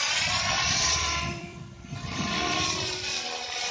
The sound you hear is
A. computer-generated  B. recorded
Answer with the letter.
A